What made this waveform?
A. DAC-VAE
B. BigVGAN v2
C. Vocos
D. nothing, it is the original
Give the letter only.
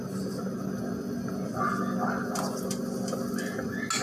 D